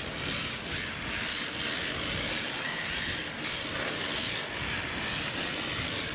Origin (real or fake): real